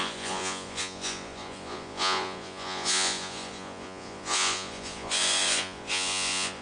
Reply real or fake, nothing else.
fake